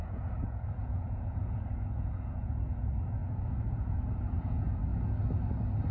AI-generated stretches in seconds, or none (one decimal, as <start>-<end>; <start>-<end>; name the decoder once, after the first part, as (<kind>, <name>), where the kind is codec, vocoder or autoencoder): 0.0-4.9 (vocoder, Vocos)